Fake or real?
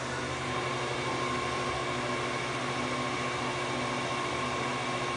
real